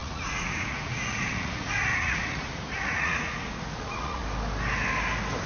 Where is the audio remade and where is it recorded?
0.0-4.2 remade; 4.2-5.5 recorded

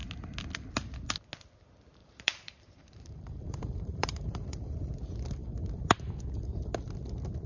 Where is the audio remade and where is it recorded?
0.0-2.0 recorded; 2.0-4.8 remade; 4.8-7.5 recorded

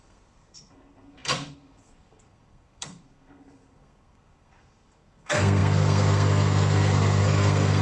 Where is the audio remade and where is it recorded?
0.0-7.8 remade

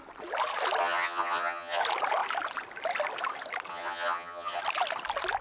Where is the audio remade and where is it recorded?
0.0-0.8 recorded; 0.8-1.8 remade; 1.8-3.7 recorded; 3.7-4.6 remade; 4.6-5.4 recorded

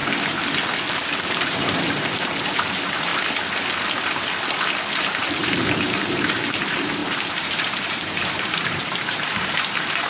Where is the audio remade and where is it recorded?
0.0-1.3 recorded; 1.3-3.1 remade; 3.1-5.0 recorded; 5.0-10.1 remade

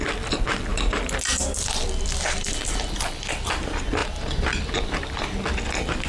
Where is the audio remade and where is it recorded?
0.0-6.1 recorded